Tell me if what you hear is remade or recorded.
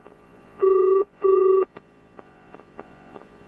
remade